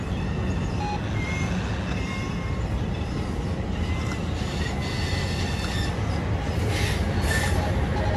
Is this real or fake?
real